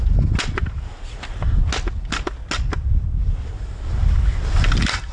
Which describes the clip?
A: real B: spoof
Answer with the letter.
A